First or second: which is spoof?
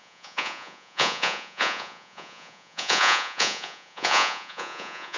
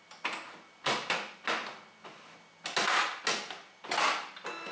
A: first